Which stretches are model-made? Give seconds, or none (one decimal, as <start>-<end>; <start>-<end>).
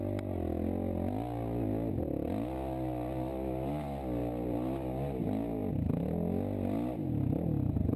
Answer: 4.2-5.7